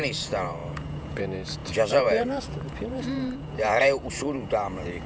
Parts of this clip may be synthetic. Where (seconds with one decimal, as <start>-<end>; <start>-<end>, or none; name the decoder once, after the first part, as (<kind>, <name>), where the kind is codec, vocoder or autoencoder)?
0.0-5.1 (vocoder, Vocos)